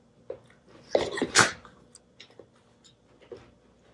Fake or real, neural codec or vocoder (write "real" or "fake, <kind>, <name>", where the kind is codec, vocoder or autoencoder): real